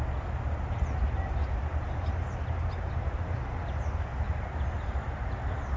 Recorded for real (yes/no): yes